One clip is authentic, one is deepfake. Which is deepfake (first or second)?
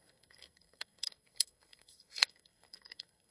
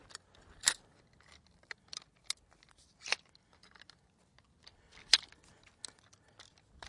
first